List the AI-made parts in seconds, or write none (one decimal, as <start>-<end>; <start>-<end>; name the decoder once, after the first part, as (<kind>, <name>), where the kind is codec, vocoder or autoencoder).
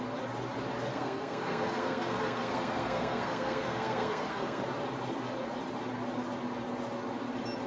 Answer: 0.9-4.6 (codec, SNAC)